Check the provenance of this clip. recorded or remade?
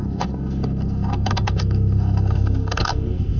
remade